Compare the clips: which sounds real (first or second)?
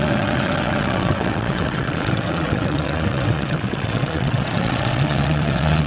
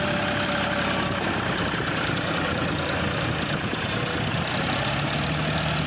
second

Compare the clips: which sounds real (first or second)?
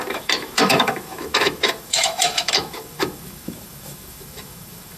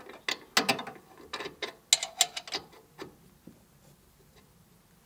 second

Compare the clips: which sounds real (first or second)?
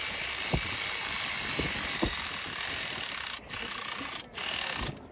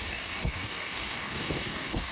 first